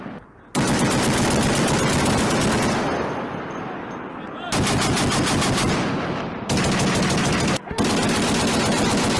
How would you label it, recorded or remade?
recorded